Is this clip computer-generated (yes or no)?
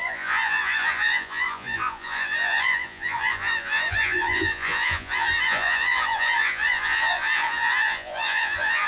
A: yes